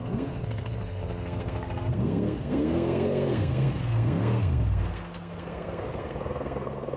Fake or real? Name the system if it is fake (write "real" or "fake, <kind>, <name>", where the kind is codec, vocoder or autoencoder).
fake, codec, SNAC